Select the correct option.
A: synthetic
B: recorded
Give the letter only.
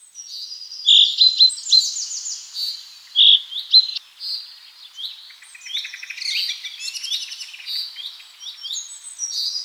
B